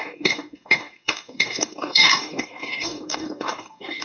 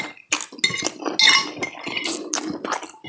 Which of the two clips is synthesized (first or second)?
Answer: first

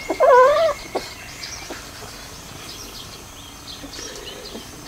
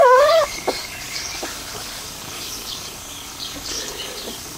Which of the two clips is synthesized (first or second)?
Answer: second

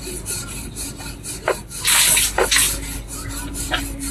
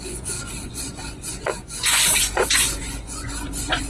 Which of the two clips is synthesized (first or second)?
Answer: second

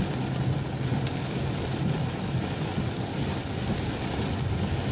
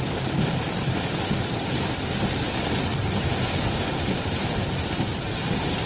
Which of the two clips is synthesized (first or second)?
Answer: second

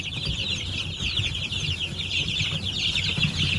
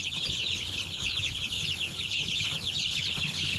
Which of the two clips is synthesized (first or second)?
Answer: second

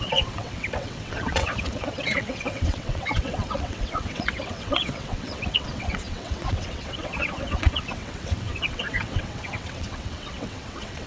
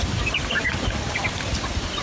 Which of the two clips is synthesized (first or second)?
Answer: first